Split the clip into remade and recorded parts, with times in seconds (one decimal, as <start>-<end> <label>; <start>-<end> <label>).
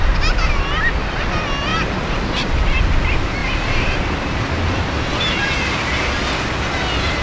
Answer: 0.0-1.7 recorded; 1.7-2.8 remade; 2.8-3.4 recorded; 3.4-5.0 remade; 5.0-7.2 recorded